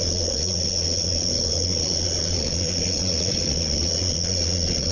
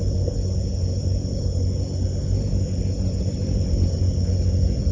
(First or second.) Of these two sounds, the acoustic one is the second